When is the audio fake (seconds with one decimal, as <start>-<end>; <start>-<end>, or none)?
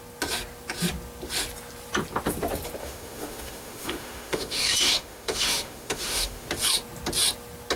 2.8-6.5